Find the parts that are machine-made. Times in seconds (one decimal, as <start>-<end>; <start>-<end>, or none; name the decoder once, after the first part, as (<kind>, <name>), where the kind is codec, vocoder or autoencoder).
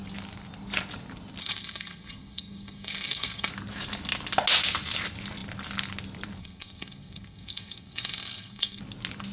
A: 1.4-3.5 (codec, SNAC); 6.4-8.8